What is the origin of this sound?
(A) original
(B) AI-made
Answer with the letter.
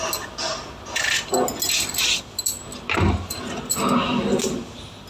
A